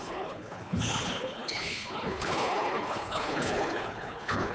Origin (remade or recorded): remade